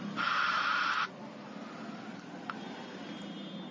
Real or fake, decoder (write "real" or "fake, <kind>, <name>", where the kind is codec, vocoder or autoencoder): real